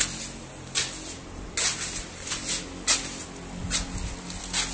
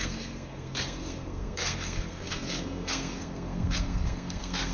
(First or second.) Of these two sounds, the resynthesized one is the second